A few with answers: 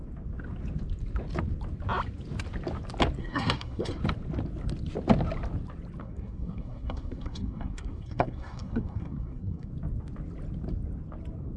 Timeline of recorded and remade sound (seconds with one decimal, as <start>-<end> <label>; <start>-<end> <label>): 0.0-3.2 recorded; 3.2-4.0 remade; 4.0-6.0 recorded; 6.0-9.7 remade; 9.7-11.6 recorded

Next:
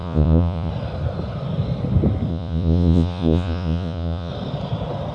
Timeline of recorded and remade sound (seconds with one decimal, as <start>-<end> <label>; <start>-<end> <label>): 0.0-0.7 remade; 0.7-2.3 recorded; 2.3-4.3 remade; 4.3-5.1 recorded

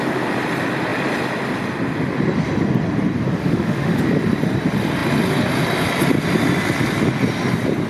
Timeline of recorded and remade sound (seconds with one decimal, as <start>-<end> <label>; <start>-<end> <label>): 0.0-3.4 recorded; 3.4-4.0 remade; 4.0-7.9 recorded

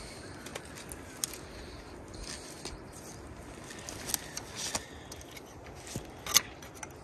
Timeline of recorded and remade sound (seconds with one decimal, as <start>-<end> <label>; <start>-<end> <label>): 0.0-7.0 recorded

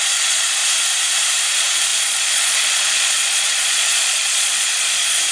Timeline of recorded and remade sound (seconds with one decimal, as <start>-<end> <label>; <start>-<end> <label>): 0.0-0.6 remade; 0.6-1.5 recorded; 1.5-5.3 remade

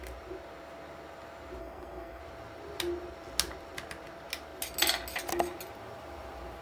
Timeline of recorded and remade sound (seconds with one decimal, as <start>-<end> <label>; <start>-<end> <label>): 0.0-1.6 recorded; 1.6-2.2 remade; 2.2-6.6 recorded

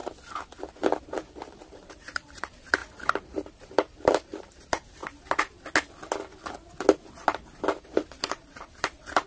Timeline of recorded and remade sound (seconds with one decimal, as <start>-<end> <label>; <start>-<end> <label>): 0.0-1.0 recorded; 1.0-5.0 remade; 5.0-7.8 recorded; 7.8-9.3 remade

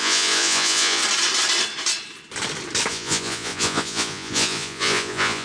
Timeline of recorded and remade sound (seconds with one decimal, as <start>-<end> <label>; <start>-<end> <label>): 0.0-1.0 remade; 1.0-2.9 recorded; 2.9-5.4 remade